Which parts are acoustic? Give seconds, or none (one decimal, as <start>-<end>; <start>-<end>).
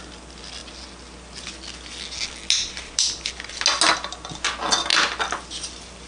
0.0-6.1